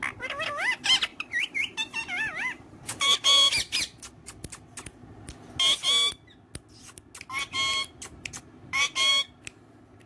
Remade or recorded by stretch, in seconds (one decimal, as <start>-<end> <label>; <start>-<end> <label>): 0.0-1.1 recorded; 1.1-5.5 remade; 5.5-8.1 recorded; 8.1-9.1 remade; 9.1-10.1 recorded